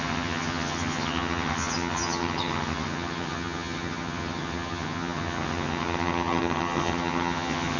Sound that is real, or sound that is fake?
fake